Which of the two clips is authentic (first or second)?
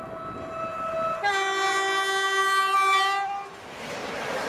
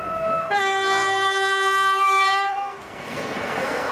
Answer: first